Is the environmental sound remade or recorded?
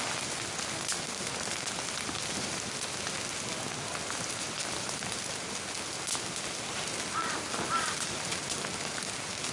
recorded